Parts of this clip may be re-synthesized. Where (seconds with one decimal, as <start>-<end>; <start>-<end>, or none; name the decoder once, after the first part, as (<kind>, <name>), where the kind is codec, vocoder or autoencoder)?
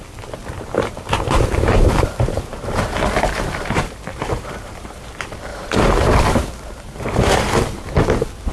0.4-5.1 (vocoder, BigVGAN v2); 5.5-7.4